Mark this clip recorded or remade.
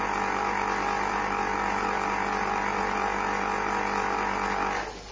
recorded